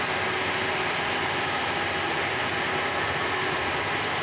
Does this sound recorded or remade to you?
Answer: recorded